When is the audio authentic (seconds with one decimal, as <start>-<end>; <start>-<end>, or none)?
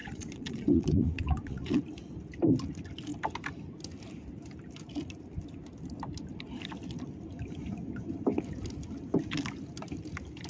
1.8-10.5